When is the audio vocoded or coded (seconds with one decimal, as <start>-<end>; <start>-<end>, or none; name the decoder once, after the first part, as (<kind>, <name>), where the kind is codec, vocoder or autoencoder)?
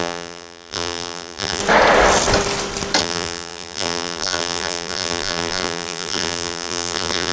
0.0-1.6 (vocoder, BigVGAN v2); 3.0-7.3